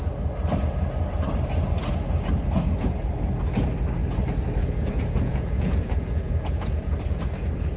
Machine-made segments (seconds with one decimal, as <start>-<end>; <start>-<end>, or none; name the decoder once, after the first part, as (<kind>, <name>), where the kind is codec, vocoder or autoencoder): 4.6-7.3 (vocoder, Vocos)